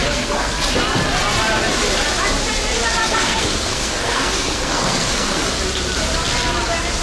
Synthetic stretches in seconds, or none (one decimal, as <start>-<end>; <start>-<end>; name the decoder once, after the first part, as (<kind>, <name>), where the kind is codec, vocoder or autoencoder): 0.0-0.5 (codec, SNAC); 3.0-5.5